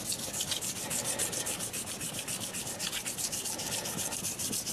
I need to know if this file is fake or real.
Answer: real